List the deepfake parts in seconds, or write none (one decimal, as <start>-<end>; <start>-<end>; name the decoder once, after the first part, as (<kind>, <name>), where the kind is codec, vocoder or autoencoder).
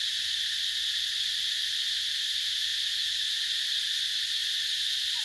none